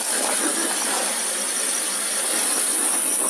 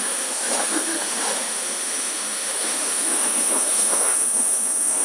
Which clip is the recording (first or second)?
first